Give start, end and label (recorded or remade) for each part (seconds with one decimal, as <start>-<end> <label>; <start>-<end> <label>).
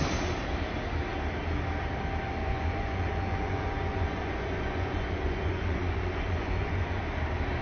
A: 0.0-2.4 recorded; 2.4-7.0 remade; 7.0-7.6 recorded